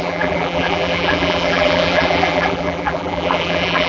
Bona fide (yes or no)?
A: no